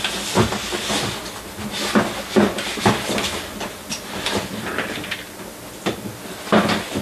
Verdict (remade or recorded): recorded